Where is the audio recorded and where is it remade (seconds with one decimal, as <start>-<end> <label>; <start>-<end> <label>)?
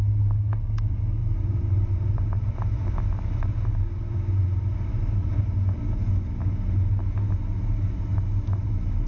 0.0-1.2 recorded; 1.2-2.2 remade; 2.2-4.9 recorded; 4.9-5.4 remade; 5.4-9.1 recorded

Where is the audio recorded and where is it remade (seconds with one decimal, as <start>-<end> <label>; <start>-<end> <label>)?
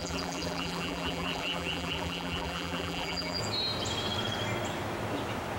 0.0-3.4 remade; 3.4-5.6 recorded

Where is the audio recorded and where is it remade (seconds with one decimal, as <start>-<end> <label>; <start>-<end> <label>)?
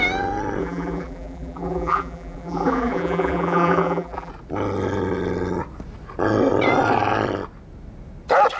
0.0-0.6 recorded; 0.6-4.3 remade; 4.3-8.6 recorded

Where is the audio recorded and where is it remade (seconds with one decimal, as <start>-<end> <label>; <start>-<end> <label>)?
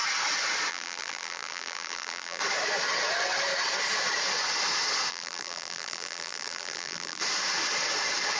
0.0-0.7 recorded; 0.7-2.4 remade; 2.4-5.1 recorded; 5.1-7.2 remade; 7.2-8.4 recorded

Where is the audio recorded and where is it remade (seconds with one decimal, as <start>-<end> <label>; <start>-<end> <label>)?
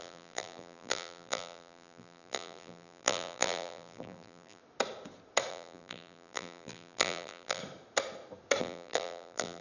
0.0-4.6 remade; 4.6-5.5 recorded; 5.5-7.6 remade; 7.6-8.6 recorded; 8.6-9.6 remade